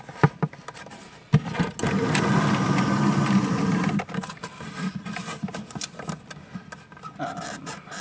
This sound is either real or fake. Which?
real